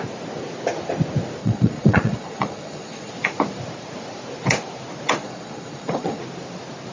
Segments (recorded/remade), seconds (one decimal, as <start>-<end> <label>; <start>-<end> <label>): 0.0-1.4 recorded; 1.4-3.1 remade; 3.1-5.2 recorded; 5.2-6.2 remade; 6.2-6.9 recorded